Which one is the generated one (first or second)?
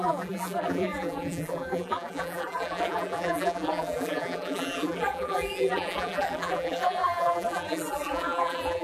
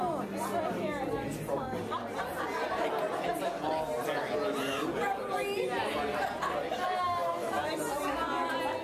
first